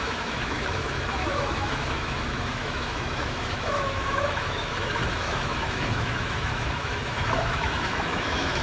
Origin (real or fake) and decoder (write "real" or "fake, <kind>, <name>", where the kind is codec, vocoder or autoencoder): fake, autoencoder, DAC-VAE